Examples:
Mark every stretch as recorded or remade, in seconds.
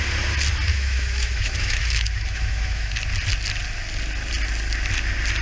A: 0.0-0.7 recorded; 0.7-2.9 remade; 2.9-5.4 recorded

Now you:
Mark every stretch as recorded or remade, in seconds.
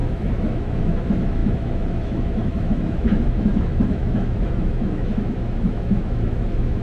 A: 0.0-6.8 remade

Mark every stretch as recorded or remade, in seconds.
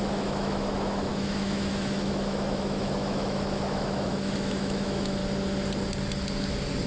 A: 0.0-5.2 remade; 5.2-6.9 recorded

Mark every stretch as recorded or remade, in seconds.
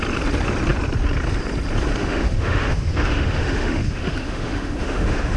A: 0.0-2.0 recorded; 2.0-5.4 remade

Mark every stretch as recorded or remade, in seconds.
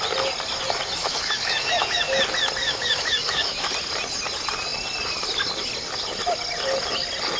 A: 0.0-1.0 recorded; 1.0-2.2 remade; 2.2-2.6 recorded; 2.6-3.7 remade; 3.7-7.4 recorded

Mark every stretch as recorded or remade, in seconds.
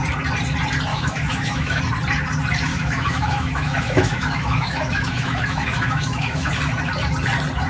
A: 0.0-0.9 recorded; 0.9-1.8 remade; 1.8-2.7 recorded; 2.7-6.5 remade; 6.5-7.7 recorded